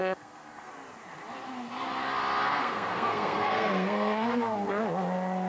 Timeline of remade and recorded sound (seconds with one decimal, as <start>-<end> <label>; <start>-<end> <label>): 0.0-0.7 remade; 0.7-2.5 recorded; 2.5-4.8 remade; 4.8-5.5 recorded